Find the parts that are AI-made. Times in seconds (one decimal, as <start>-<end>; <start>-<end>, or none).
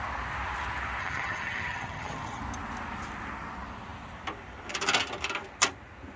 1.0-2.4